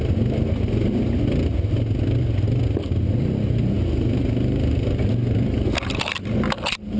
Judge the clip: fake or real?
real